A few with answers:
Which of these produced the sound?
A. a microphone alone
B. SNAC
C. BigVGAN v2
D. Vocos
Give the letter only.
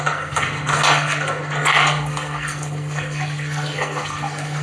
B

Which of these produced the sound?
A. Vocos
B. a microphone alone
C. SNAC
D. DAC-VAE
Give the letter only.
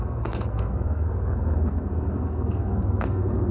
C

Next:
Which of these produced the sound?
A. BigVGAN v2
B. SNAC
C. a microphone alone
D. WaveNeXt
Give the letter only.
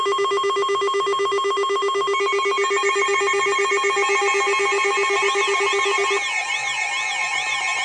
C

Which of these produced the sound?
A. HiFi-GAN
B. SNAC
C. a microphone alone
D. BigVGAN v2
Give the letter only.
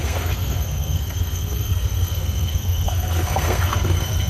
B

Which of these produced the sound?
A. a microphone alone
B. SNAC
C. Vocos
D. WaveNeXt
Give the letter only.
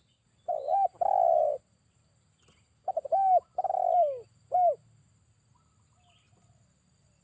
A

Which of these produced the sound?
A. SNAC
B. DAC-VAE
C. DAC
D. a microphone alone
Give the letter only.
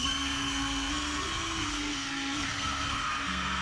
A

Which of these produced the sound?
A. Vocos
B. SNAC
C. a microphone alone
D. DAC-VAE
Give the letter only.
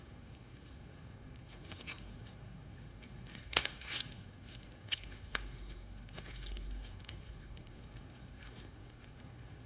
B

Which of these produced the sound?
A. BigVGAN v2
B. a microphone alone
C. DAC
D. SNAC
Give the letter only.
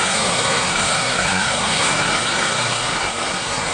D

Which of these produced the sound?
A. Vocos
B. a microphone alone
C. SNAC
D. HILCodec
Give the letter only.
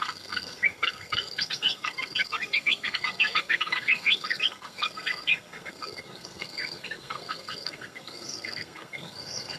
C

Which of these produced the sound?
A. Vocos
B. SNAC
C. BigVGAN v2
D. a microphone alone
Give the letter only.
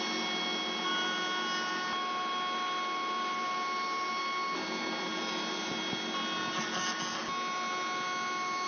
D